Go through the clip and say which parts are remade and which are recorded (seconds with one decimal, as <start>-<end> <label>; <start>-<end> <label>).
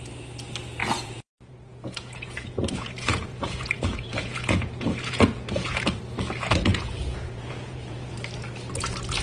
0.0-0.8 recorded; 0.8-6.0 remade; 6.0-6.7 recorded; 6.7-8.1 remade; 8.1-9.2 recorded